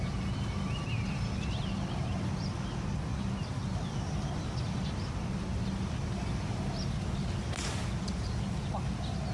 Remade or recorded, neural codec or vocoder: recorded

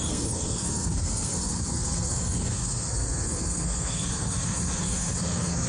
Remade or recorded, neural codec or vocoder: remade, codec, SNAC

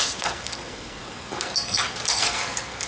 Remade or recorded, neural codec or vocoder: remade, codec, SNAC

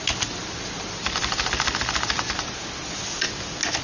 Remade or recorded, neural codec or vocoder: recorded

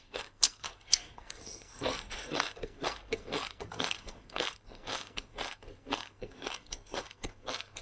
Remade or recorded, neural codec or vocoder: remade, codec, SNAC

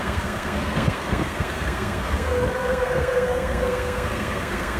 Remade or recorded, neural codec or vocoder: remade, codec, SNAC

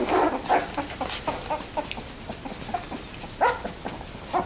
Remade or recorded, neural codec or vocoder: recorded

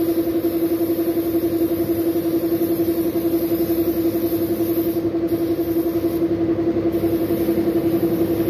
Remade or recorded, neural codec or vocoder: recorded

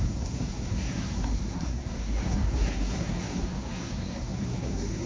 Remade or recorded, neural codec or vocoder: remade, codec, SNAC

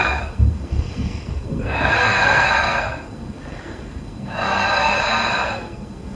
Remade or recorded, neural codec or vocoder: remade, codec, SNAC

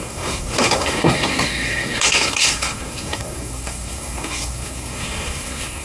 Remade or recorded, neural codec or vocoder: remade, codec, SNAC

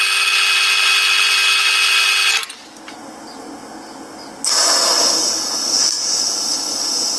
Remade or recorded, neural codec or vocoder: recorded